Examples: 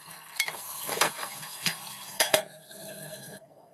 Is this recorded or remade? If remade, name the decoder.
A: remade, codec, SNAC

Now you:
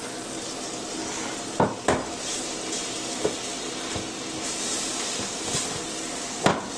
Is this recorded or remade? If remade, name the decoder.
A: recorded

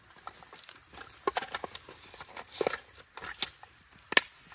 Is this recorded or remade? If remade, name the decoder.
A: recorded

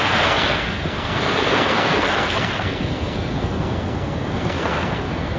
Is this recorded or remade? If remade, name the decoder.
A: remade, codec, SNAC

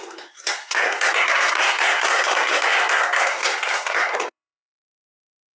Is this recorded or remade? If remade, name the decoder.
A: remade, codec, SNAC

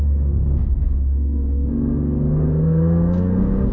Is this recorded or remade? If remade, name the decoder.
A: remade, codec, SNAC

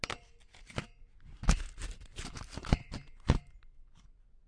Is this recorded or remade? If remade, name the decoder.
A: recorded